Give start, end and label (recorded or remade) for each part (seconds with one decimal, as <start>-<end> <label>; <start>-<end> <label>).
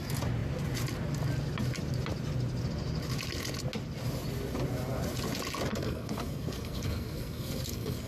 0.0-5.7 recorded; 5.7-8.1 remade